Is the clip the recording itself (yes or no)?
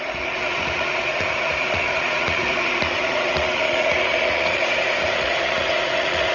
no